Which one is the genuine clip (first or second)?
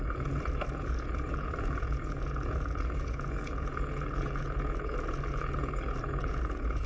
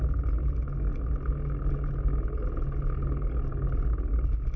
second